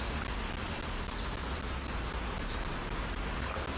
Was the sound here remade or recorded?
recorded